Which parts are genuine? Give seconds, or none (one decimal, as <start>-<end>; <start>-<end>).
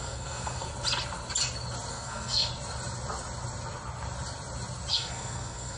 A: 0.7-1.9; 2.5-4.9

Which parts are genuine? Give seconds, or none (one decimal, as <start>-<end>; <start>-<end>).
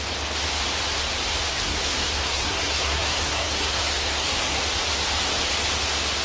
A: 0.0-1.5; 4.6-6.2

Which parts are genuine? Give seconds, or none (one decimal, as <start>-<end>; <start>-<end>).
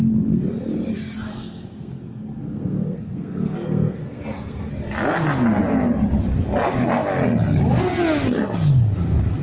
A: 0.0-1.3; 4.7-9.4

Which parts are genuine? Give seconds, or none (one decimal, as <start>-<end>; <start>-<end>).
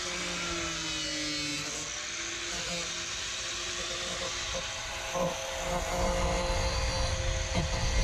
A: 0.0-8.0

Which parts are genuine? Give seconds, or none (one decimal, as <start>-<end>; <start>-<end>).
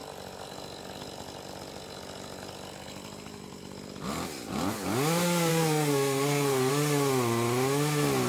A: 0.0-5.5; 6.7-8.3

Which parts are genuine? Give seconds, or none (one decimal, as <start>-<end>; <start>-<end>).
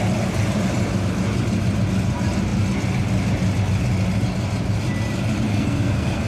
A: 0.0-5.5